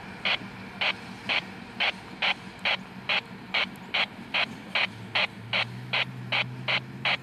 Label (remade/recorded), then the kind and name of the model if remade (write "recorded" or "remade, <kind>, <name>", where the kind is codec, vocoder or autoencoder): recorded